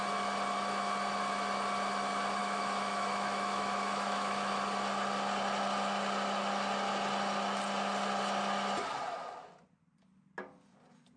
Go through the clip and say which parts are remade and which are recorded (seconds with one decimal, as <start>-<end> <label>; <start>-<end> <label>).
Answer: 0.0-2.4 recorded; 2.4-4.5 remade; 4.5-11.2 recorded